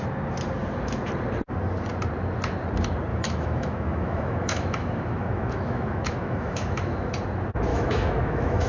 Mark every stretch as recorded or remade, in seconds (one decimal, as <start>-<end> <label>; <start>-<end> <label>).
0.0-3.1 recorded; 3.1-7.1 remade; 7.1-7.7 recorded; 7.7-8.7 remade